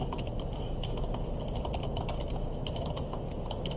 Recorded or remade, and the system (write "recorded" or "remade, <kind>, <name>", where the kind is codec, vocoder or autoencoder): recorded